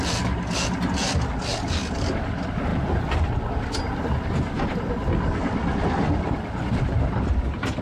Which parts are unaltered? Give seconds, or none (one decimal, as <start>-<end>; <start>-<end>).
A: 0.0-7.8